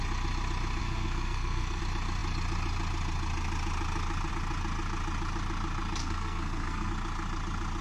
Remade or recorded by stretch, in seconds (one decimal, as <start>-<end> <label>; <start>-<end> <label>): 0.0-0.8 recorded; 0.8-1.8 remade; 1.8-6.0 recorded; 6.0-6.9 remade; 6.9-7.8 recorded